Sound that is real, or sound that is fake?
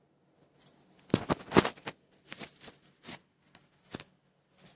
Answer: real